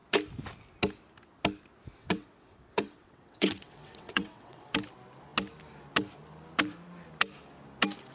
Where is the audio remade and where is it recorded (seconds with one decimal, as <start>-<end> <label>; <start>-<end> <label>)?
0.0-2.0 recorded; 2.0-4.7 remade; 4.7-8.1 recorded